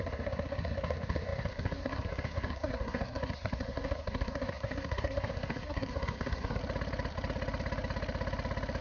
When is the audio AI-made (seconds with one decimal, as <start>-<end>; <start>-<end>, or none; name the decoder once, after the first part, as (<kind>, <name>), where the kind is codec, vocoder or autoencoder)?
0.0-6.6 (codec, SNAC)